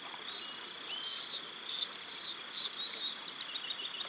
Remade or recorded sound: recorded